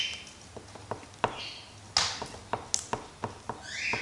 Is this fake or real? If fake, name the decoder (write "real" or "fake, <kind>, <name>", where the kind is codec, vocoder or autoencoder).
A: real